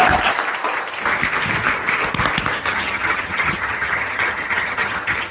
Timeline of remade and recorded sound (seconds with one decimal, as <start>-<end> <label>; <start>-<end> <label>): 0.0-2.6 recorded; 2.6-5.3 remade